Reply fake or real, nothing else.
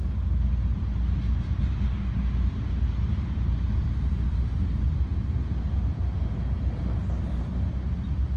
real